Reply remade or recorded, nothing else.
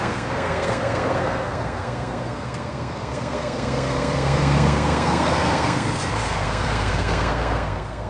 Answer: remade